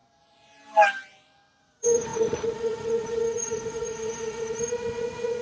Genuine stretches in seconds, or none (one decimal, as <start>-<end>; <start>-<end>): 0.0-1.6